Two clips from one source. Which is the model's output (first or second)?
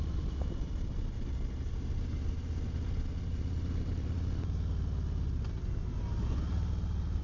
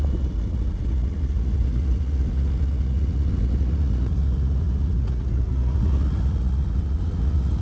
second